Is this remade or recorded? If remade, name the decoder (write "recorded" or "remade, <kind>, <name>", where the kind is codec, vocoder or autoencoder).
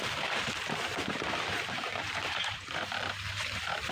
remade, vocoder, BigVGAN v2